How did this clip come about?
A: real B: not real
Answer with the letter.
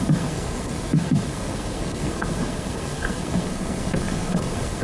B